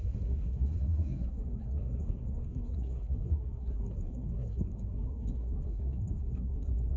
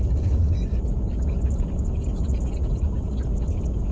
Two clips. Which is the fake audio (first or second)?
first